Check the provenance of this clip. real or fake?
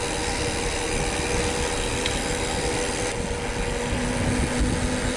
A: real